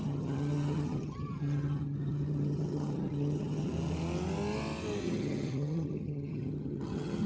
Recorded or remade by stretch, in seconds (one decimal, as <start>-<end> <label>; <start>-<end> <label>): 0.0-3.7 remade; 3.7-5.0 recorded; 5.0-7.3 remade